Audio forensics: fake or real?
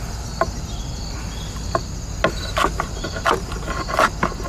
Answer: real